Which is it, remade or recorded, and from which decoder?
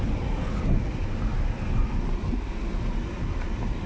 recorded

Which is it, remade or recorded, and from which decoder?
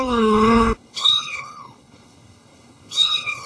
remade, codec, HILCodec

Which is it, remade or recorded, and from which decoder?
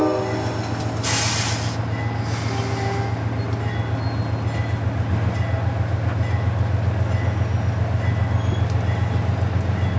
recorded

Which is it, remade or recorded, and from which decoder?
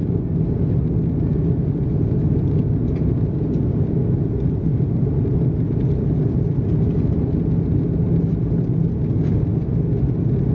recorded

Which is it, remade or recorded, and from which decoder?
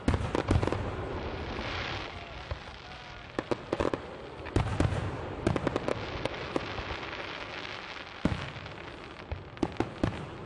recorded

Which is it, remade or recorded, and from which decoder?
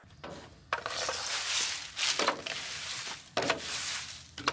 recorded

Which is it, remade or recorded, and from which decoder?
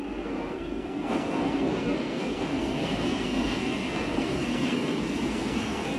remade, codec, SNAC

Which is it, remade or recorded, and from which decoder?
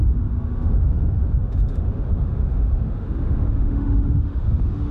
remade, autoencoder, DAC-VAE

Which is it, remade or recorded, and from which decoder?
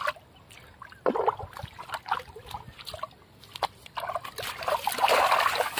recorded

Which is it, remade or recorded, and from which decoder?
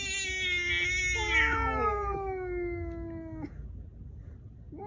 recorded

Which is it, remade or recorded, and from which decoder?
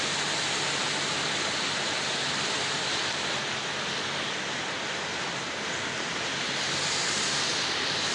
recorded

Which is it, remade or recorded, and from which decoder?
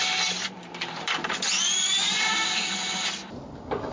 recorded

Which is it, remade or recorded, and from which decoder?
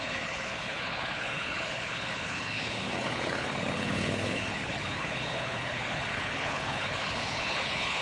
remade, codec, HILCodec